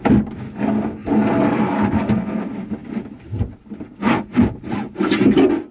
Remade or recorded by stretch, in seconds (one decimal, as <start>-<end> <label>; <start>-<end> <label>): 0.0-5.7 recorded